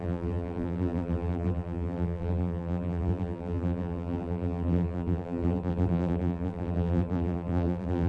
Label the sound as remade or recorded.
remade